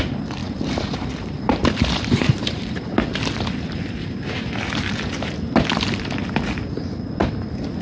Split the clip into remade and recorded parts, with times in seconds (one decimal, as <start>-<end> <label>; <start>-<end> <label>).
0.0-0.4 recorded; 0.4-3.0 remade; 3.0-7.8 recorded